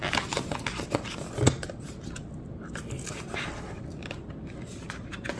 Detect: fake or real real